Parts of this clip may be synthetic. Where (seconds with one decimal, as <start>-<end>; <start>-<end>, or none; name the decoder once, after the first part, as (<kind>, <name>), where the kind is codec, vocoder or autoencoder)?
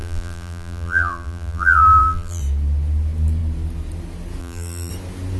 0.0-2.4 (vocoder, BigVGAN v2); 4.4-4.9